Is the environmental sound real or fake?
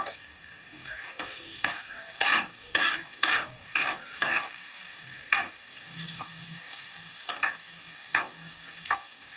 fake